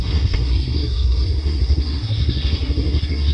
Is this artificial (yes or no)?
yes